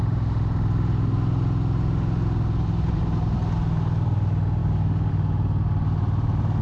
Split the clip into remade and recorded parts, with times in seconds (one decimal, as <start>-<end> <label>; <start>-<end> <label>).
0.0-4.6 recorded; 4.6-5.1 remade; 5.1-6.6 recorded